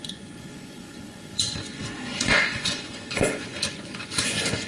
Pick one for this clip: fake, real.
fake